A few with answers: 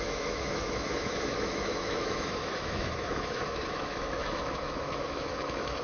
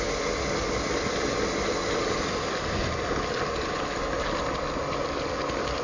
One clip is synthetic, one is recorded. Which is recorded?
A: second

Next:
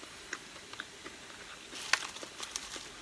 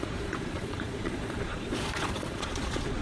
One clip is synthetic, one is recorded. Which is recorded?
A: first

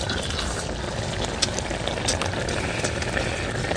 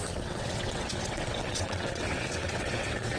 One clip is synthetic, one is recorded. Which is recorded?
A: first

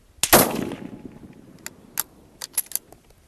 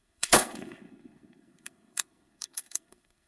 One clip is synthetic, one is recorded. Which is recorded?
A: first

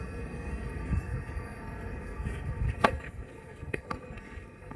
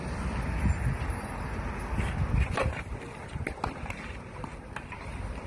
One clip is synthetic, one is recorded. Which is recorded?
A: second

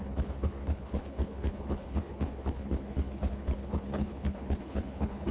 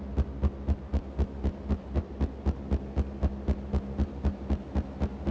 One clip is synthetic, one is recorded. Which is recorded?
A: second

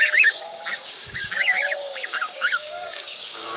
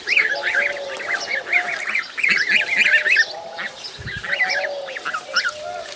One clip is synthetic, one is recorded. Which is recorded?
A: second